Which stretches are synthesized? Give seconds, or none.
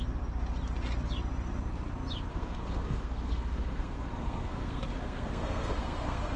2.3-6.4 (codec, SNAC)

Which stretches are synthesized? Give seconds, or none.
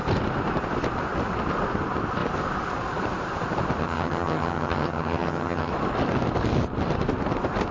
3.8-5.7 (vocoder, HiFi-GAN)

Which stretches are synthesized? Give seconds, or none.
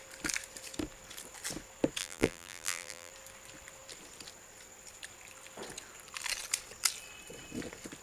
2.0-3.1 (vocoder, BigVGAN v2)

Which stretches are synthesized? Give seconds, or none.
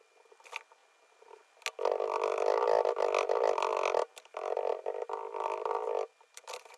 none